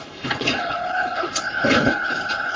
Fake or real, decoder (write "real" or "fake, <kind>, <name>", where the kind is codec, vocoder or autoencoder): fake, codec, HILCodec